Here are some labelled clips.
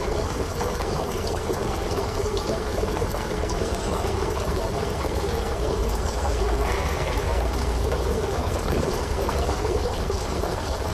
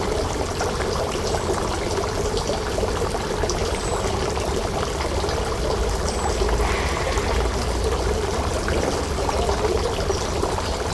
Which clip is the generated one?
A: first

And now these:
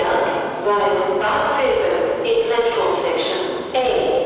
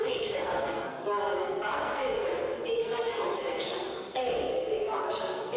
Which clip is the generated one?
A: second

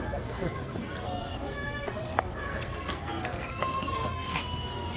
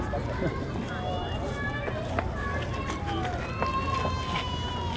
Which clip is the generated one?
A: first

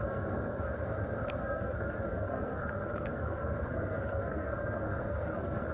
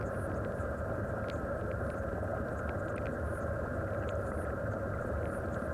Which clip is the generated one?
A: first